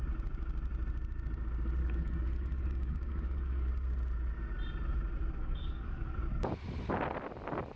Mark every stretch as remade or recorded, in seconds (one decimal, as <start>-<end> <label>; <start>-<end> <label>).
0.0-1.8 recorded; 1.8-3.7 remade; 3.7-5.4 recorded; 5.4-6.1 remade; 6.1-7.8 recorded